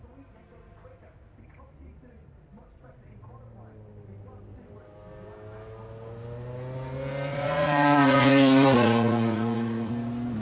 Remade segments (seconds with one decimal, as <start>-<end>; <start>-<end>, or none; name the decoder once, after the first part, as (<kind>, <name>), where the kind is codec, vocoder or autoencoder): 7.3-9.9 (vocoder, Vocos)